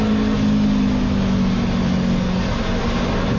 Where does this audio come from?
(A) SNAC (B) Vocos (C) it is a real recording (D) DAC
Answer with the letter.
C